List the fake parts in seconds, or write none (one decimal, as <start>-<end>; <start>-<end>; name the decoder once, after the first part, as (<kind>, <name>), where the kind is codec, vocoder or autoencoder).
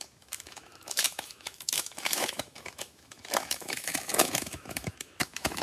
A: 0.0-5.6 (autoencoder, DAC-VAE)